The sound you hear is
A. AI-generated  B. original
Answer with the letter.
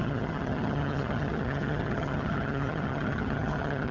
A